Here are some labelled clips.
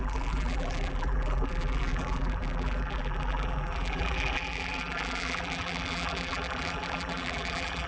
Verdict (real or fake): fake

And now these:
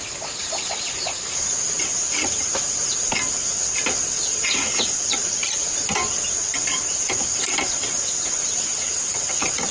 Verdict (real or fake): real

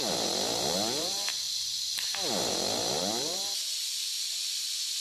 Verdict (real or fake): fake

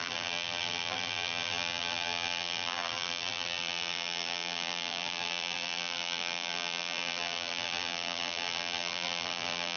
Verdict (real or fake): fake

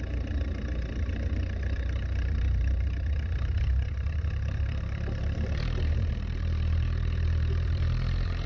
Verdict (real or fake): fake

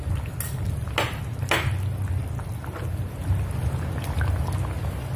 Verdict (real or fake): real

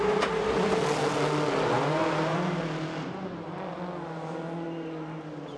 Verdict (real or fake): real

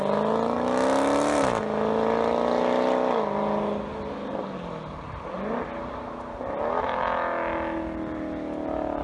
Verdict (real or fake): real